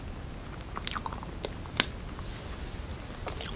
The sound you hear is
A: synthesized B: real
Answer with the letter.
B